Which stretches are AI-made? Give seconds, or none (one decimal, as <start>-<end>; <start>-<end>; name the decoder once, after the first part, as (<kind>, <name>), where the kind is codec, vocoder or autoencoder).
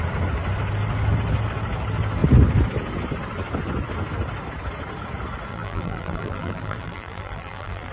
5.5-7.9 (vocoder, BigVGAN v2)